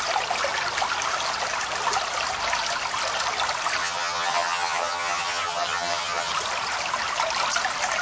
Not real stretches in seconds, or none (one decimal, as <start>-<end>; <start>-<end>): 3.8-6.3

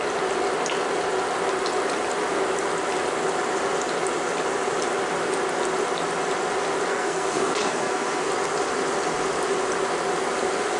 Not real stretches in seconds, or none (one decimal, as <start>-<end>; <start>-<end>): 6.9-8.3

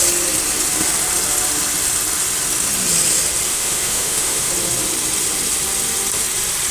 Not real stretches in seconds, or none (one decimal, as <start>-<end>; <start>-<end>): 3.5-4.5

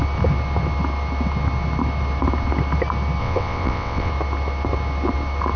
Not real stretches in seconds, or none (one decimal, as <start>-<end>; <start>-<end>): 3.2-4.1

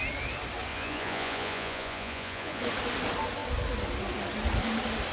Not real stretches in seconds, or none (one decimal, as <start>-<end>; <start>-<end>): 0.7-2.6

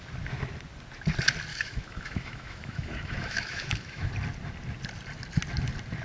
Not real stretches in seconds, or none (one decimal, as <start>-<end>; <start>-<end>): 1.5-4.1